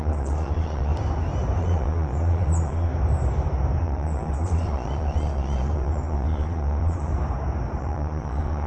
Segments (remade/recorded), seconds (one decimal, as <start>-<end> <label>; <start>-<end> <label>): 0.0-0.9 remade; 0.9-1.6 recorded; 1.6-2.9 remade; 2.9-3.8 recorded; 3.8-7.1 remade; 7.1-7.8 recorded; 7.8-8.7 remade